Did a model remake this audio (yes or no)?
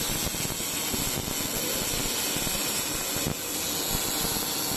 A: no